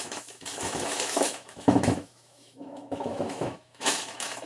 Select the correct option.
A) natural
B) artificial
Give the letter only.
B